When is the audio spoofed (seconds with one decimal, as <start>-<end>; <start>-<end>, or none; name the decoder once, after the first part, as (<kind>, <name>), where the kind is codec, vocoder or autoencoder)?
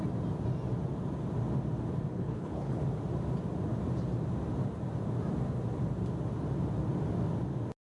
2.1-2.8 (codec, HILCodec)